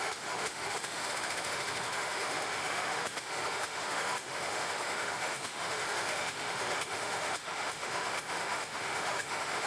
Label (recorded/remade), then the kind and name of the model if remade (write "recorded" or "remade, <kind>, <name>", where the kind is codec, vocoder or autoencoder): remade, autoencoder, DAC-VAE